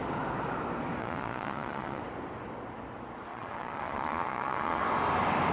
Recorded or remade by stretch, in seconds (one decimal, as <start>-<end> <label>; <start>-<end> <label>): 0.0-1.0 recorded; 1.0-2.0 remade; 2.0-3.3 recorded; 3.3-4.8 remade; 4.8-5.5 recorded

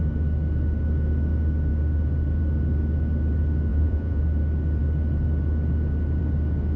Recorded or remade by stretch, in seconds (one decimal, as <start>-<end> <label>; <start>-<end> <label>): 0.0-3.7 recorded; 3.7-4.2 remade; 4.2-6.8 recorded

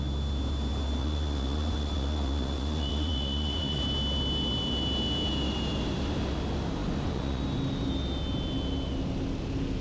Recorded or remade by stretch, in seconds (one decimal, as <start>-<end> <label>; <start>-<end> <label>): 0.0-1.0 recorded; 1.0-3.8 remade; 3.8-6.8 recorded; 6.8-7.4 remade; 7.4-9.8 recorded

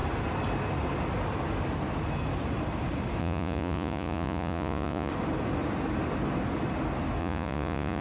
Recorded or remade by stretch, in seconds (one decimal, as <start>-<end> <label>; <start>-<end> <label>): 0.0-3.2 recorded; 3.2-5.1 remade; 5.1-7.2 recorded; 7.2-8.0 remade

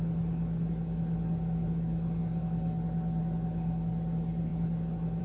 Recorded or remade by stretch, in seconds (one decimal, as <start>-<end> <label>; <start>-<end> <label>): 0.0-5.2 recorded

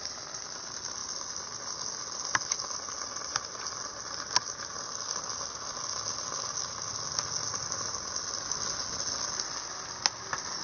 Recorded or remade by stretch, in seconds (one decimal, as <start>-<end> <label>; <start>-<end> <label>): 0.0-10.6 recorded